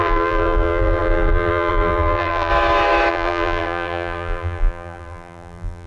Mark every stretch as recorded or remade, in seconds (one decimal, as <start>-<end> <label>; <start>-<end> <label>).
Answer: 0.0-2.5 remade; 2.5-3.1 recorded; 3.1-5.9 remade